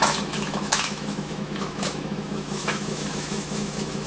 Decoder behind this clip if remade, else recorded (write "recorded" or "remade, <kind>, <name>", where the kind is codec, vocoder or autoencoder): remade, autoencoder, DAC-VAE